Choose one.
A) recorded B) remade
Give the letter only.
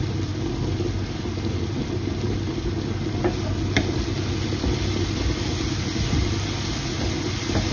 A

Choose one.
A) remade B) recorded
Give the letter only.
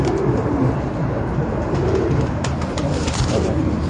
A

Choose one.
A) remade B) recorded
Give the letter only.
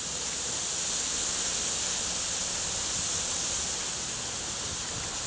B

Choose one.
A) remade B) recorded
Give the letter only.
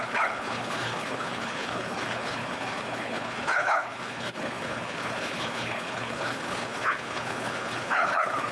A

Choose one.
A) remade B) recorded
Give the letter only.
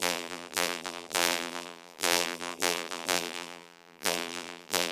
A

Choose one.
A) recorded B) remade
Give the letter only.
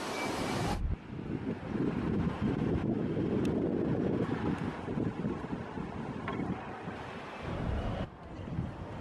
A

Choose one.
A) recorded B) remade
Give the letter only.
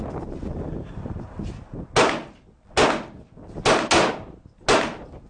A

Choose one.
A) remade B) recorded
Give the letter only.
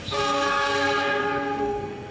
A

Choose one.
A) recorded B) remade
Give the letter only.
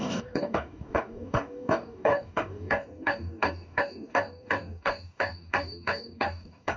B